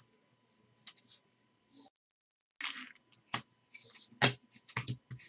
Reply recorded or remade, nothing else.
recorded